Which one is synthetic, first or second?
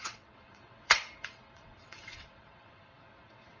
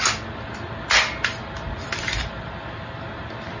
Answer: first